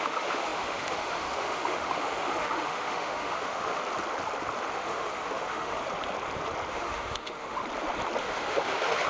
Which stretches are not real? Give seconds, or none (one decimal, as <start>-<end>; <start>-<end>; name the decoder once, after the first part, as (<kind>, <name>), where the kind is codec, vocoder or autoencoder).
0.0-3.8 (autoencoder, DAC-VAE); 4.7-5.8; 6.7-7.6; 8.2-9.1